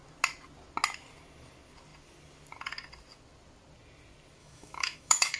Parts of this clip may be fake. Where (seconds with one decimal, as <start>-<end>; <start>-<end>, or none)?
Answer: 4.4-5.4